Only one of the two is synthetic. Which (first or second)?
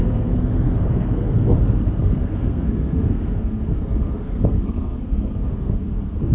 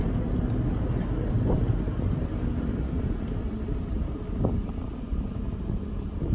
first